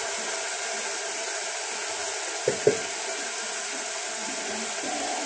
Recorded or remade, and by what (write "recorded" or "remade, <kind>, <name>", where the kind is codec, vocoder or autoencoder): recorded